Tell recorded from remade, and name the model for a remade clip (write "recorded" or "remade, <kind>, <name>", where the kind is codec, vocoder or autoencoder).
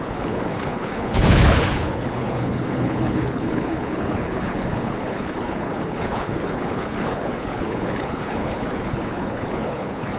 remade, codec, HILCodec